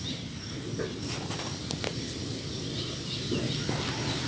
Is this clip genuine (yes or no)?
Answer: yes